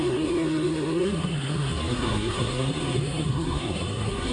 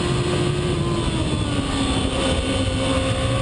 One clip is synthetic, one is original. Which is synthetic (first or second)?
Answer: first